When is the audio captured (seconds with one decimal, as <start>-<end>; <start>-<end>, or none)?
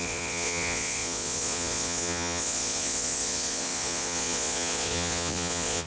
none